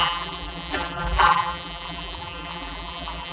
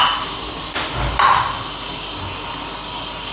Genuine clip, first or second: second